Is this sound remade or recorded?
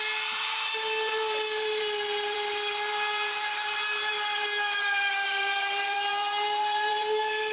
remade